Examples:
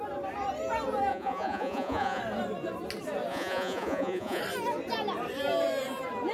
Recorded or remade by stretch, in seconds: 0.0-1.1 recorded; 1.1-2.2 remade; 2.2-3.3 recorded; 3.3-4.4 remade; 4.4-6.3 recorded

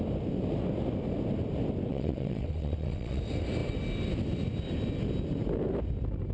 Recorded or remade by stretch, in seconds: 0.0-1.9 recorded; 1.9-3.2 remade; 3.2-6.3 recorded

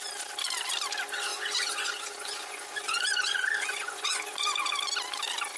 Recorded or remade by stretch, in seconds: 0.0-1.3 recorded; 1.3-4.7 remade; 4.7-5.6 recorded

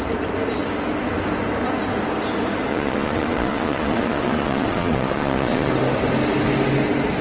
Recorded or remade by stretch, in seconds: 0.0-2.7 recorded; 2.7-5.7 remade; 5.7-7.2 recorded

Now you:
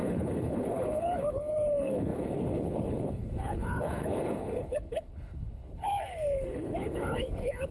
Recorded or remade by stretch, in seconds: 0.0-7.7 remade

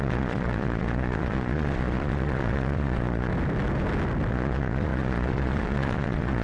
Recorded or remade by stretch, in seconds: 0.0-3.3 remade; 3.3-4.3 recorded; 4.3-6.4 remade